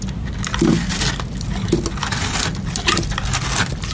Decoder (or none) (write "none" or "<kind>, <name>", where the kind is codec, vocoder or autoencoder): none